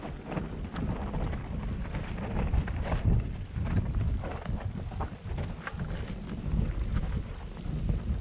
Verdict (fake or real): real